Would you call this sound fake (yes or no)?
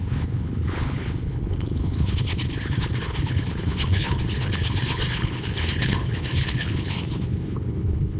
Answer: yes